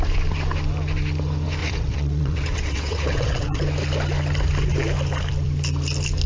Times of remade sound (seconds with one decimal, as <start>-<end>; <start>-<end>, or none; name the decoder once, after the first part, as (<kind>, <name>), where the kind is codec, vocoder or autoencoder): 1.6-3.6 (vocoder, WaveNeXt)